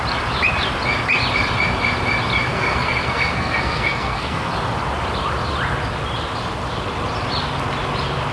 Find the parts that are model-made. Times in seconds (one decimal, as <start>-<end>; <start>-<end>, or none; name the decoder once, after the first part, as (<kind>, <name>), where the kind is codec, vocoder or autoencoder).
2.5-4.5 (codec, SNAC)